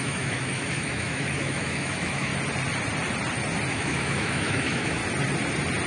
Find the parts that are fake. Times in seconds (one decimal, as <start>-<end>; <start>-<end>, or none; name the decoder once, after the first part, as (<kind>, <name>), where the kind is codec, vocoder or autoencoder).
0.0-2.3 (autoencoder, DAC-VAE); 3.7-5.0